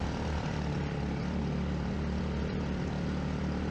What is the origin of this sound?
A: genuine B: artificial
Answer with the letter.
B